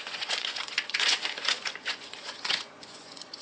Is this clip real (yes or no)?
no